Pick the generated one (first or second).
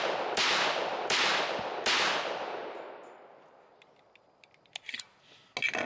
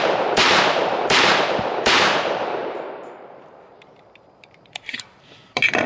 second